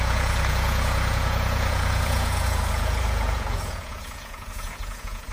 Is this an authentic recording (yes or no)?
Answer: no